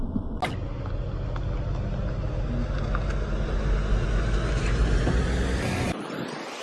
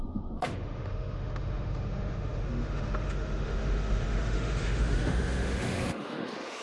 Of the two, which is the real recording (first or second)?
first